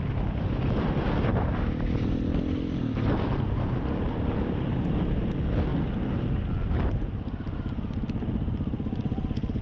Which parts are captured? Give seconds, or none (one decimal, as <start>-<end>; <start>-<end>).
0.0-9.6